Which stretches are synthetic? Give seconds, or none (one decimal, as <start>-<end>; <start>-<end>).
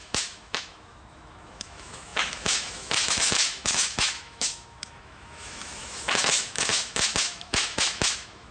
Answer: 0.0-8.5